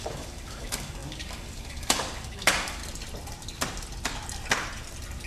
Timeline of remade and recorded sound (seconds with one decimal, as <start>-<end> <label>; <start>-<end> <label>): 0.0-2.8 remade; 2.8-5.3 recorded